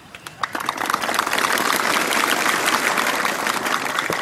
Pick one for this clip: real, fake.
real